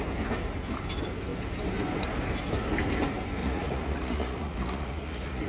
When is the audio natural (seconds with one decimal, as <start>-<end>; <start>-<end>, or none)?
0.0-3.4